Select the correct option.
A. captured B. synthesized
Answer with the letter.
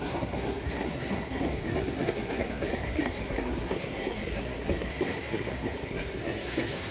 B